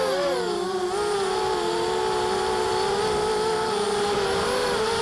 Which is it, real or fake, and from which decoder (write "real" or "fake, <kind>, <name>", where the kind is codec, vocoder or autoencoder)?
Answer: fake, vocoder, BigVGAN v2